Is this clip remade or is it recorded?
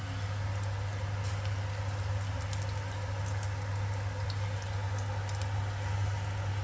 recorded